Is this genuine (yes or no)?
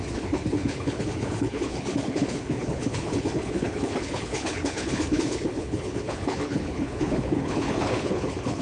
no